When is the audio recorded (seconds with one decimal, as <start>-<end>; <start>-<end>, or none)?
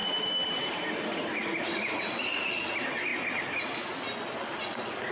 2.0-5.1